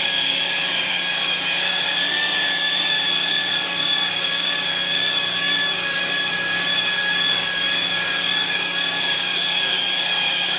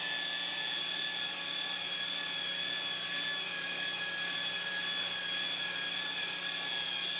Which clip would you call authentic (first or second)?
second